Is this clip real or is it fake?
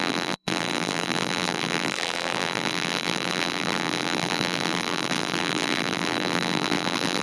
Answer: fake